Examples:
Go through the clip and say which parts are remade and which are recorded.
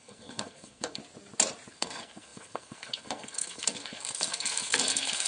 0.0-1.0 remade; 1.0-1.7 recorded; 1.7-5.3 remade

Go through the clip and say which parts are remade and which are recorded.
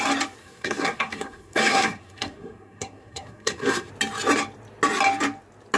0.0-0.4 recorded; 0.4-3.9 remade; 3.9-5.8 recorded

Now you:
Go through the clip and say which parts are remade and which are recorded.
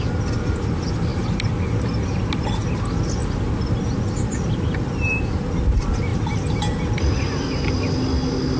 0.0-8.6 recorded